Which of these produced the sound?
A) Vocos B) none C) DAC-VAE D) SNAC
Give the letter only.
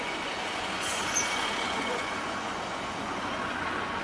A